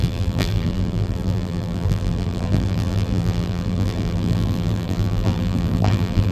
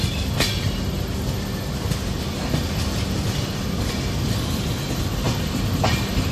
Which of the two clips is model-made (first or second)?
first